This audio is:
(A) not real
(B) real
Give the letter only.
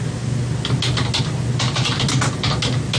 B